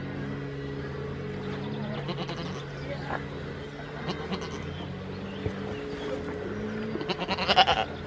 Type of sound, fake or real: real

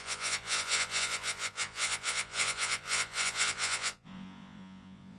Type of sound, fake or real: fake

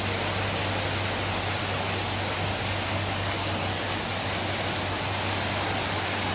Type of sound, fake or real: real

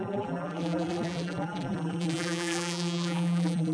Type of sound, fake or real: fake